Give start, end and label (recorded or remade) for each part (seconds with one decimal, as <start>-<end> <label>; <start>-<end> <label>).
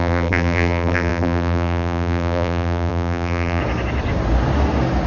0.0-3.6 remade; 3.6-5.1 recorded